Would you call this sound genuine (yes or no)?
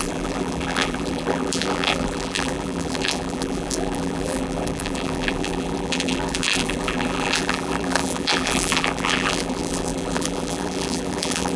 no